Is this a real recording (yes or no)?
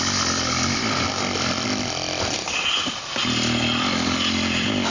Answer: yes